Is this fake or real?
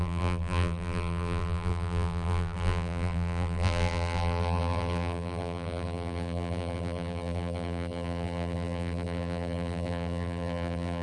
fake